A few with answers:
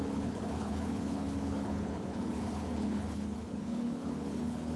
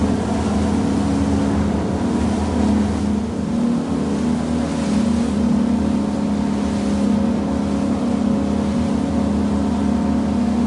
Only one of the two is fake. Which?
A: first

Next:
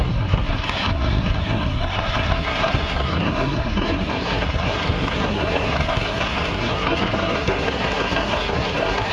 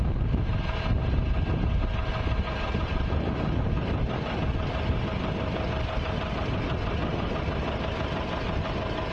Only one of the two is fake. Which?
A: first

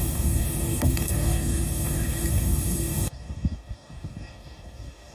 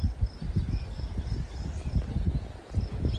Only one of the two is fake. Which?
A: first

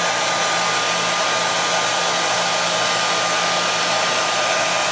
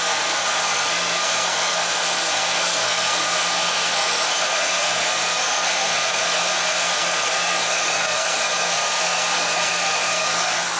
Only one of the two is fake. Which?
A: second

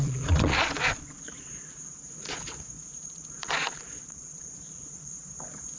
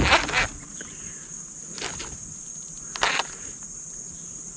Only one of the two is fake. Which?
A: first